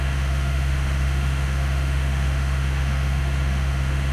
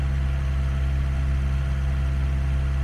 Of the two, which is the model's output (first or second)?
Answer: first